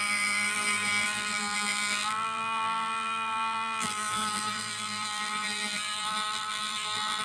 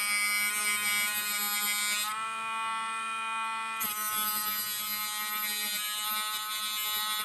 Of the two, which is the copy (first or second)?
first